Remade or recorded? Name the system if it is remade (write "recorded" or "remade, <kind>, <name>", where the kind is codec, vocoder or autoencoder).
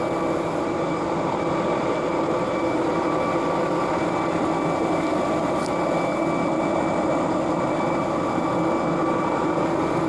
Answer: recorded